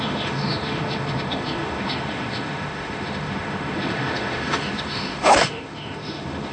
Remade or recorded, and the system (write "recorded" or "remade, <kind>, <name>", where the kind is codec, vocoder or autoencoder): remade, autoencoder, DAC-VAE